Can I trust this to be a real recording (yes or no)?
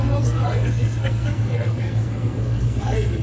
no